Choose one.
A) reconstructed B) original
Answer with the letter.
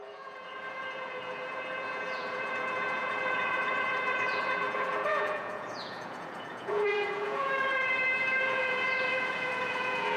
A